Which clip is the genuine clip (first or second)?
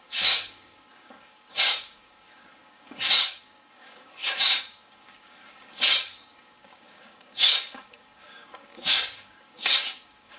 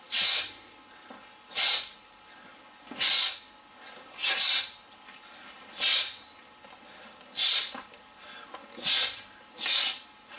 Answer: second